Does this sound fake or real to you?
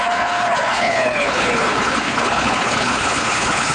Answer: fake